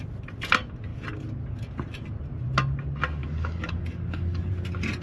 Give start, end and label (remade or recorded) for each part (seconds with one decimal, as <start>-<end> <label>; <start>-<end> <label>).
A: 0.0-3.2 recorded; 3.2-4.5 remade; 4.5-5.0 recorded